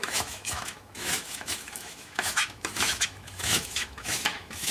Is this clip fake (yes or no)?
yes